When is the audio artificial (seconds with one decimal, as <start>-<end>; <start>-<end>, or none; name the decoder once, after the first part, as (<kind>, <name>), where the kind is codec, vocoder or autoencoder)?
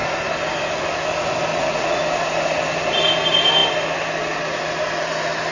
1.5-2.0 (vocoder, Vocos)